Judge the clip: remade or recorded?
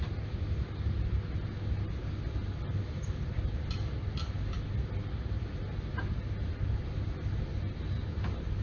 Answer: recorded